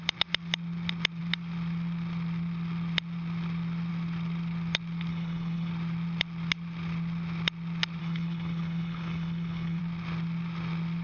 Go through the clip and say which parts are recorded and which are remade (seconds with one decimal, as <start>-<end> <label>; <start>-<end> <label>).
0.0-5.1 recorded; 5.1-5.7 remade; 5.7-8.0 recorded; 8.0-9.8 remade; 9.8-11.0 recorded